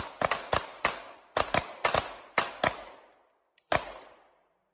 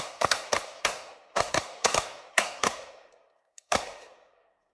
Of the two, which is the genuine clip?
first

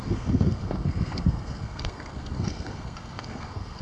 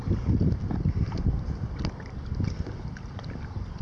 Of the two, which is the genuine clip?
second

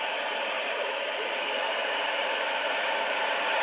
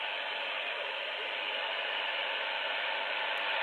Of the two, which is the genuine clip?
second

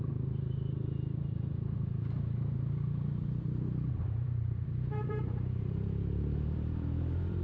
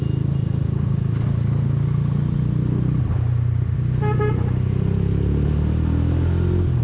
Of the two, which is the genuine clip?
second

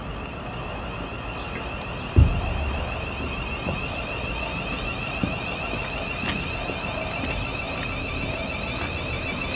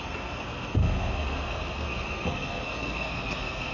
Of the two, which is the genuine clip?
first